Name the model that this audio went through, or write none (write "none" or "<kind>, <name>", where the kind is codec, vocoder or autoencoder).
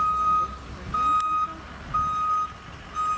none